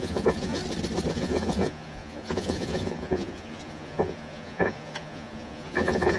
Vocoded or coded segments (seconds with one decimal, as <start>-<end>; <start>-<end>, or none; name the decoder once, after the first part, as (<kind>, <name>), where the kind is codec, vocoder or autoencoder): 0.0-0.6 (vocoder, Vocos); 1.1-6.2